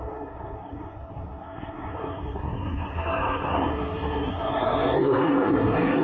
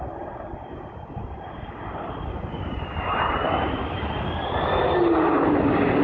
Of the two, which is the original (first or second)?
second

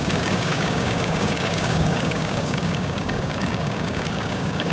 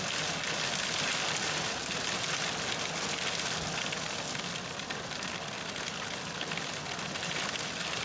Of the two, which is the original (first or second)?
second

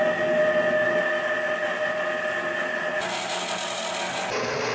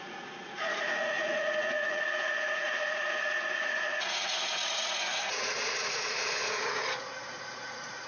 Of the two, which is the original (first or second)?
first